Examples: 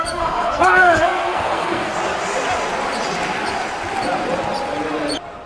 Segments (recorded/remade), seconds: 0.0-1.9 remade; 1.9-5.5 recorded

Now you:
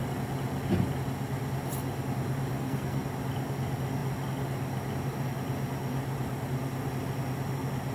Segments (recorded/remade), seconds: 0.0-2.5 recorded; 2.5-3.0 remade; 3.0-7.9 recorded

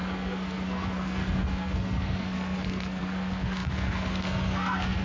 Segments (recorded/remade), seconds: 0.0-5.0 remade